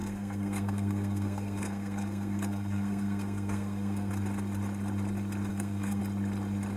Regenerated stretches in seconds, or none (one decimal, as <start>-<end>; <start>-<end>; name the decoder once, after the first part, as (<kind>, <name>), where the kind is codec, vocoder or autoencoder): 0.0-4.1 (codec, SNAC); 5.5-6.0